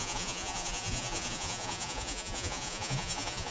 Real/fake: fake